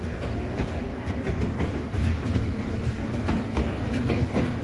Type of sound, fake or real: fake